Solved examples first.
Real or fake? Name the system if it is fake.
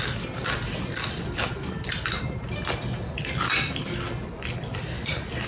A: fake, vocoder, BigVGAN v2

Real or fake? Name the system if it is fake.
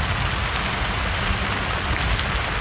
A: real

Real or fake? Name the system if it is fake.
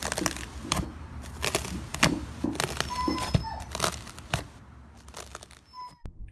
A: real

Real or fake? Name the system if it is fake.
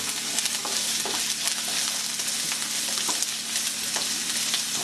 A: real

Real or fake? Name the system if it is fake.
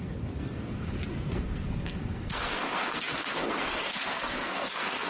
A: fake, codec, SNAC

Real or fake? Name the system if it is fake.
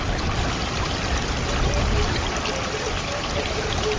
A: real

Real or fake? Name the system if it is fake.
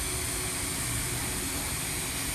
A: real